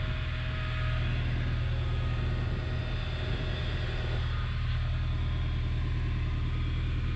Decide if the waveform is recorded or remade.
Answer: recorded